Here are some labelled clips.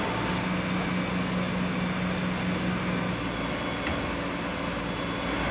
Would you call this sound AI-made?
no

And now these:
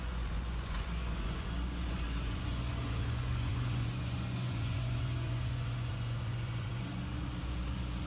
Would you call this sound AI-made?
yes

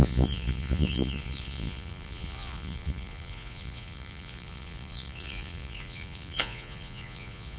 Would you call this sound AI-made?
yes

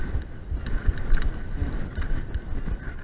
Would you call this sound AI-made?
no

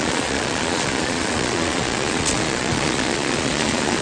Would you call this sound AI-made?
yes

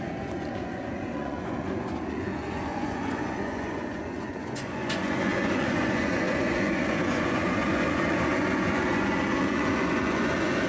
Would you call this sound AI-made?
yes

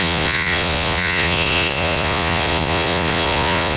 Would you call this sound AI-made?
yes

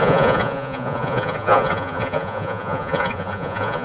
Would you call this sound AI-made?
yes